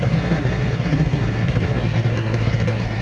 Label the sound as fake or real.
fake